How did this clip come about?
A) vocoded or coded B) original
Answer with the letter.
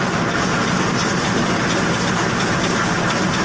B